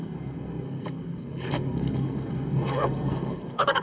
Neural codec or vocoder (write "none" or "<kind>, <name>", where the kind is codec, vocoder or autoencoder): codec, SNAC